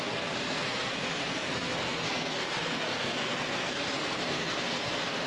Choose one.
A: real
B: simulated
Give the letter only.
B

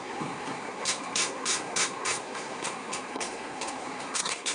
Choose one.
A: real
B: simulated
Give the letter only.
B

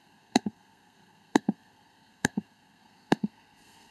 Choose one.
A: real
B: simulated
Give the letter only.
B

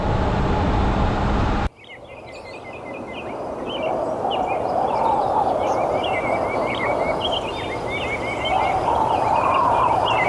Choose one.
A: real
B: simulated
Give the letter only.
A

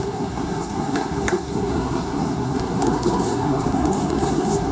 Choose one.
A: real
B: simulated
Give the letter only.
B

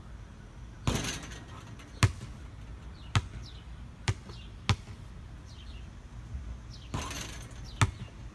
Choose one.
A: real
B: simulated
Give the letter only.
A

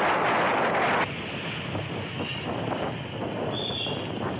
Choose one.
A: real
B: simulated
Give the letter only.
A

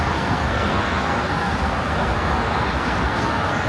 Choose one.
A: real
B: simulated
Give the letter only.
B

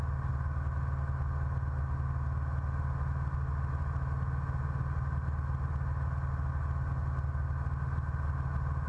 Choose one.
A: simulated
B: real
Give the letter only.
B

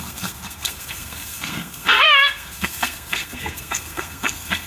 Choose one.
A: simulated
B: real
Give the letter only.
A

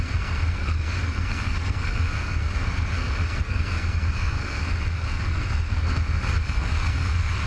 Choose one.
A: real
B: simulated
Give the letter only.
B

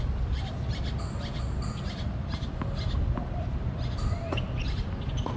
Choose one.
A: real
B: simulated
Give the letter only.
A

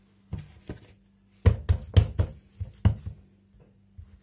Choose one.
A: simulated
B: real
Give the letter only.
B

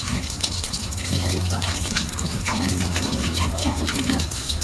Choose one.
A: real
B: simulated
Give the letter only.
B